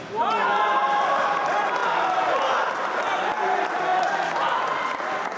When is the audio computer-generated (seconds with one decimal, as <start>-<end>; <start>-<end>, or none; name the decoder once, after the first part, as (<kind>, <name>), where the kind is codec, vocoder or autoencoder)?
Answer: 0.8-1.4 (vocoder, BigVGAN v2); 3.9-5.4